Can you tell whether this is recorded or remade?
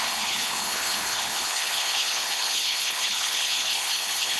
remade